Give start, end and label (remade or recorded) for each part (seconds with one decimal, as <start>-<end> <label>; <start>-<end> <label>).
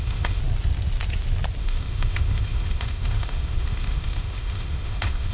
0.0-0.4 remade; 0.4-1.6 recorded; 1.6-5.3 remade